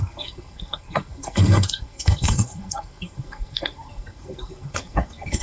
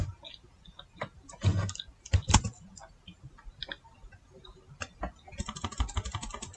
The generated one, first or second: first